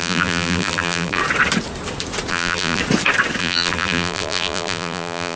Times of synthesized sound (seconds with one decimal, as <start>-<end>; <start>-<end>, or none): 0.0-1.2; 2.3-2.8; 3.4-5.4